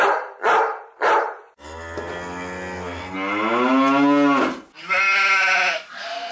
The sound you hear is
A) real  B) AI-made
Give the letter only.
A